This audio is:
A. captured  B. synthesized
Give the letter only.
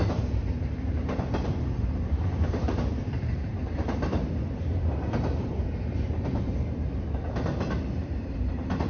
B